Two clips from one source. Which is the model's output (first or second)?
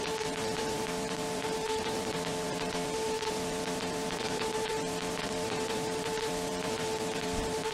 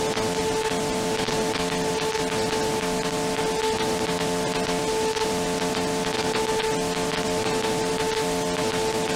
first